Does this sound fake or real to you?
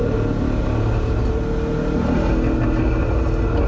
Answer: real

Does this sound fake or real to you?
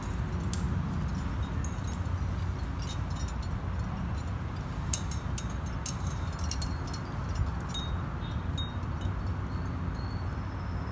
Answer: real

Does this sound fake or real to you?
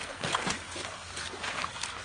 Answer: fake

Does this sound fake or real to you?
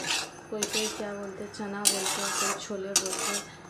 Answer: real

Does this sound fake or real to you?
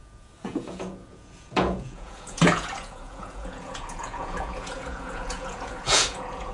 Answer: fake